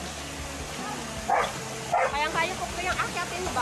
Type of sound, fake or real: real